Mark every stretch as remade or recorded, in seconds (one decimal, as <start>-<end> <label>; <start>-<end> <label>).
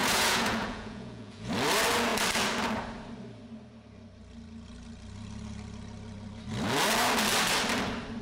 0.0-1.5 remade; 1.5-8.2 recorded